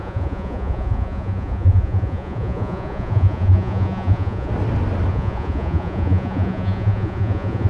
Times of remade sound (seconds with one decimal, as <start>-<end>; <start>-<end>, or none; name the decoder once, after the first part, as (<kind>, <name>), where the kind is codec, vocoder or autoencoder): 0.0-4.5 (vocoder, Vocos); 5.1-7.7